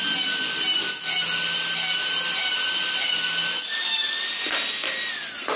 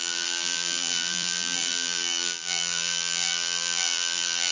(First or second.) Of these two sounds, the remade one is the second